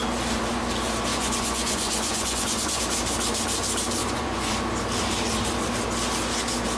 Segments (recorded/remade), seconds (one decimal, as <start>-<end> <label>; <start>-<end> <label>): 0.0-1.1 recorded; 1.1-2.8 remade; 2.8-4.0 recorded; 4.0-4.6 remade; 4.6-6.8 recorded

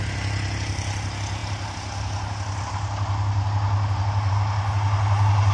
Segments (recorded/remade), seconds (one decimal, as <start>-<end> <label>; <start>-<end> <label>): 0.0-5.5 recorded

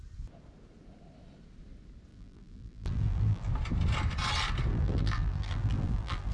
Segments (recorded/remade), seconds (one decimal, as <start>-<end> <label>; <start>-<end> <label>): 0.0-2.1 recorded; 2.1-3.5 remade; 3.5-4.7 recorded; 4.7-6.3 remade

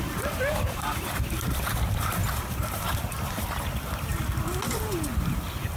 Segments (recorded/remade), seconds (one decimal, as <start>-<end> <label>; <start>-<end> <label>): 0.0-2.2 remade; 2.2-2.7 recorded; 2.7-4.1 remade; 4.1-5.1 recorded; 5.1-5.8 remade

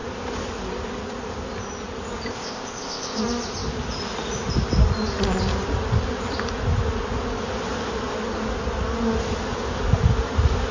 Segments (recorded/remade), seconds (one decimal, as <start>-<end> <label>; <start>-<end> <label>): 0.0-2.3 recorded; 2.3-3.2 remade; 3.2-10.7 recorded

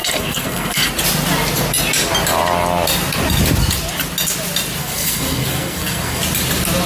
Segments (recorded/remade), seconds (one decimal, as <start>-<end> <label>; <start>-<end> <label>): 0.0-0.9 remade; 0.9-4.8 recorded; 4.8-6.2 remade; 6.2-6.9 recorded

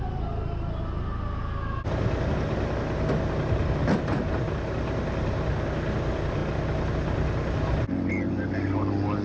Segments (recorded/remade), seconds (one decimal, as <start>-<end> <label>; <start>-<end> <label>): 0.0-9.2 recorded

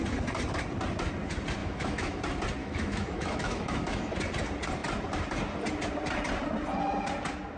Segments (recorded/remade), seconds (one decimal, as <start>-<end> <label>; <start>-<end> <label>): 0.0-1.6 recorded; 1.6-2.2 remade; 2.2-2.6 recorded; 2.6-4.1 remade; 4.1-7.6 recorded